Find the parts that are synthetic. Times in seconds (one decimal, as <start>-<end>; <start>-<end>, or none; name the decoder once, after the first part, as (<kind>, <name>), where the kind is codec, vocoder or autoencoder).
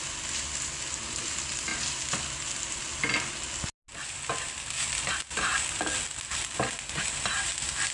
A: none